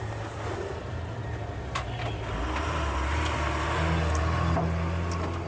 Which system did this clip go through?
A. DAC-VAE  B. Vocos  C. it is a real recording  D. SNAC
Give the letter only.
C